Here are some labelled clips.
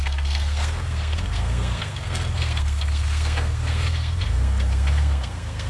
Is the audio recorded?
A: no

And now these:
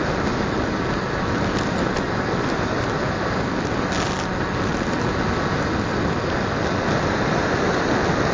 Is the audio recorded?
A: yes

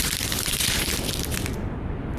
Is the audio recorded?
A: yes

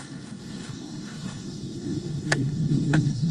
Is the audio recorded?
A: no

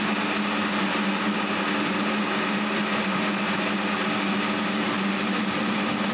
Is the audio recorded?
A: yes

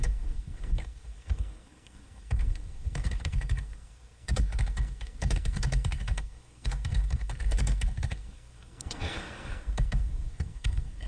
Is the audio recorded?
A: no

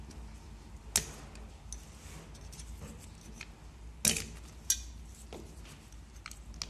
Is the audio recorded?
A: yes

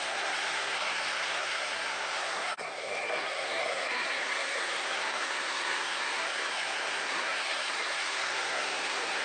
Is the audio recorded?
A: no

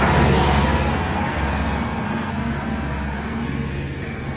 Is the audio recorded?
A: no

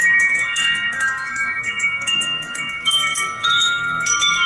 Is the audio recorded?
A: no